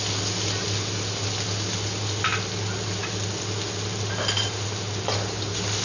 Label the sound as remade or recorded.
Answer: recorded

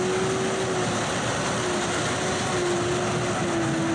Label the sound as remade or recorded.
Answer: recorded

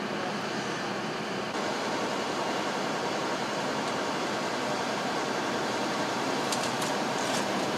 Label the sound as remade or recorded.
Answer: remade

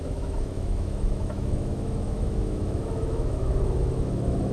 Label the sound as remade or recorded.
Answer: remade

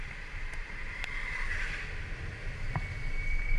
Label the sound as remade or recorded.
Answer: recorded